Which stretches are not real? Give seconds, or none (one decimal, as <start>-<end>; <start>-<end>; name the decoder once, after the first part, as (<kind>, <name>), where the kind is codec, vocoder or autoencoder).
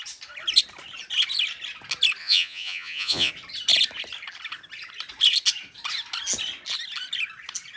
2.2-3.3 (vocoder, Vocos)